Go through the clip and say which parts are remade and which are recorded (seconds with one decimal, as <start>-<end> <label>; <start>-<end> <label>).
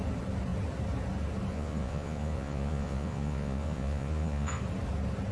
0.0-1.5 recorded; 1.5-4.6 remade; 4.6-5.3 recorded